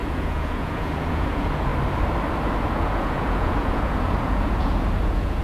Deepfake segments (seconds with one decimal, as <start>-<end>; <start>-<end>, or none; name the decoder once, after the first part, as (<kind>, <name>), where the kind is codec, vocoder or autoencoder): 0.0-1.7 (vocoder, Vocos); 2.6-5.4